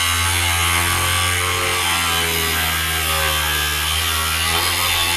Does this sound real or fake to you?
real